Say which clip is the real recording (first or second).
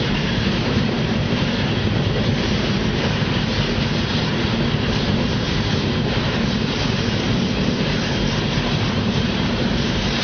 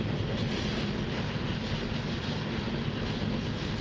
second